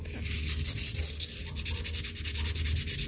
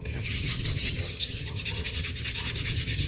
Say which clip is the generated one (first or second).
second